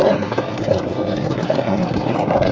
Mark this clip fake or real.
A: fake